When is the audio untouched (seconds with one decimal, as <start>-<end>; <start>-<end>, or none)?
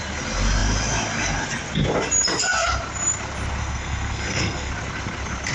0.0-3.6; 4.7-5.5